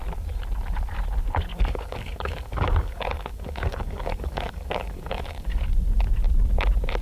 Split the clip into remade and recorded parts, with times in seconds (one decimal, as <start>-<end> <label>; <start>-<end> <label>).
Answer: 0.0-1.5 recorded; 1.5-5.7 remade; 5.7-7.0 recorded